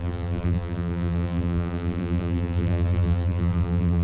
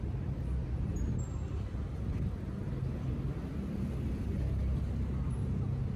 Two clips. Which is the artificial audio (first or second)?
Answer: first